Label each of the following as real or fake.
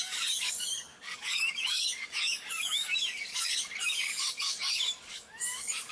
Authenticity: fake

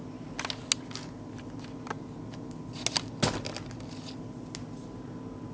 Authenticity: real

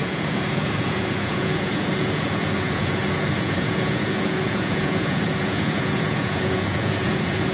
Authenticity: fake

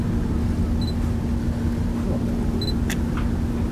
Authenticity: real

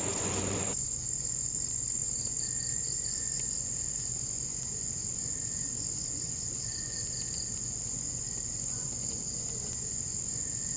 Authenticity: fake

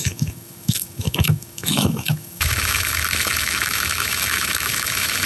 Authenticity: fake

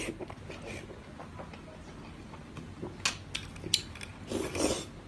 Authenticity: real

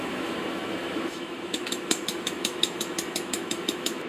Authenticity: fake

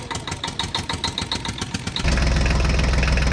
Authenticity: real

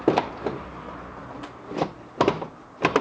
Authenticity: real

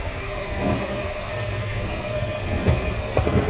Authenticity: fake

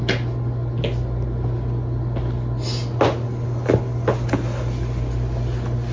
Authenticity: real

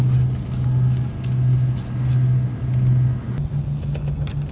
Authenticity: real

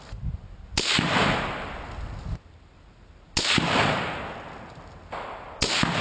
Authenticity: real